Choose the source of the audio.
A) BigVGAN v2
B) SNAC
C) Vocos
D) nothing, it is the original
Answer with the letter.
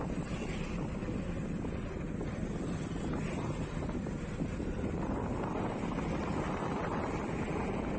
D